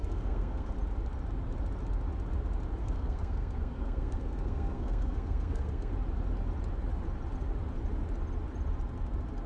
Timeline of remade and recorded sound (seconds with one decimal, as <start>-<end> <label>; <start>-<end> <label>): 0.0-0.7 remade; 0.7-2.8 recorded; 2.8-5.9 remade; 5.9-9.5 recorded

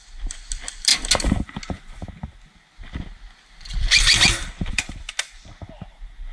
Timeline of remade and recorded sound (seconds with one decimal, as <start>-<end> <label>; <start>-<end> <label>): 0.0-6.3 recorded

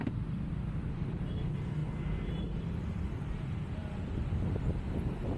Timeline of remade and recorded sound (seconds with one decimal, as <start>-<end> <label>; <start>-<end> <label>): 0.0-5.4 recorded